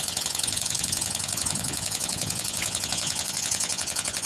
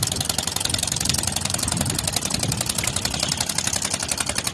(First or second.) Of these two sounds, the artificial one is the first